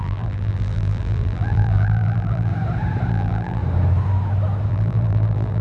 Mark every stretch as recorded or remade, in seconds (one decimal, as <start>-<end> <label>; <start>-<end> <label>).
0.0-2.5 remade; 2.5-3.1 recorded; 3.1-3.6 remade; 3.6-4.7 recorded; 4.7-5.6 remade